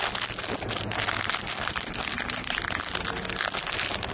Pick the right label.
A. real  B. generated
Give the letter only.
A